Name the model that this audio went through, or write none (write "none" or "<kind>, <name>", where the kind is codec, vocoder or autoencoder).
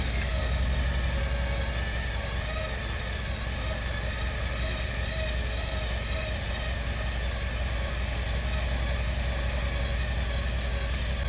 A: none